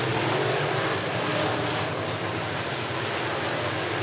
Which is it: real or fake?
real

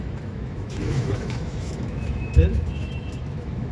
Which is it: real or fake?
fake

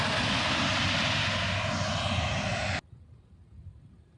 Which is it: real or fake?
real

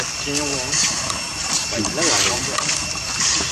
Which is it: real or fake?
real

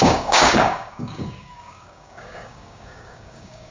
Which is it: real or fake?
fake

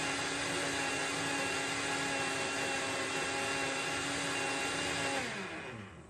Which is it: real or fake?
real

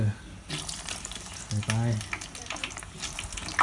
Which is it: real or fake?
real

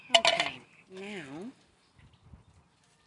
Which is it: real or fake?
real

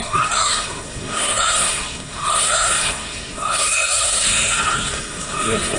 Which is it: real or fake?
fake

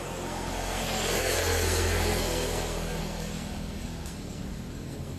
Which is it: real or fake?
fake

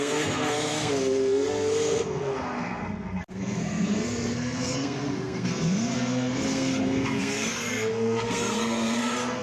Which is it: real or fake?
fake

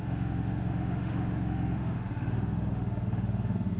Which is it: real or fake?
fake